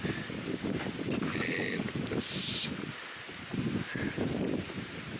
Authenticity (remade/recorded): recorded